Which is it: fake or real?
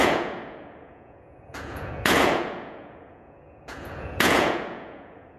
fake